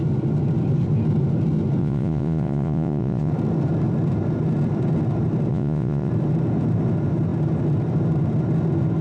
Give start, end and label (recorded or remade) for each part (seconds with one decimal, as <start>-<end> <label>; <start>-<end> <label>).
0.0-1.8 recorded; 1.8-3.3 remade; 3.3-5.5 recorded; 5.5-6.1 remade; 6.1-9.0 recorded